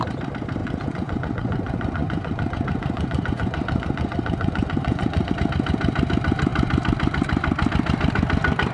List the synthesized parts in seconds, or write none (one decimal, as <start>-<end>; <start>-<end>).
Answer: 0.6-5.3

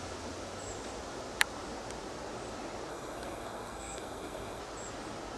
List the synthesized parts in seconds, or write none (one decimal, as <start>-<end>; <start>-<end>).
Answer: 2.9-4.6

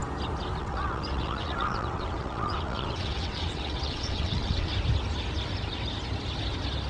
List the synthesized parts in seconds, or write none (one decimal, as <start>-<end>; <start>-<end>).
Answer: 0.6-4.7

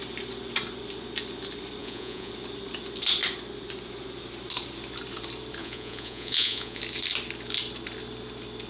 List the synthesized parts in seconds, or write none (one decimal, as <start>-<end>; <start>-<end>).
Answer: 1.8-2.3; 5.6-6.8

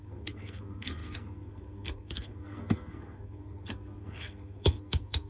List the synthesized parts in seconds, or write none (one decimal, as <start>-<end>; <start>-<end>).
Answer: 0.0-5.3

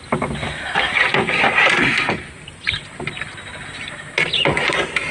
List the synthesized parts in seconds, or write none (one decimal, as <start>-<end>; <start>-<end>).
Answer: none

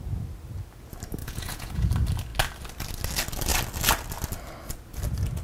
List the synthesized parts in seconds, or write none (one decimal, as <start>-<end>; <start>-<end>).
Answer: 1.2-1.9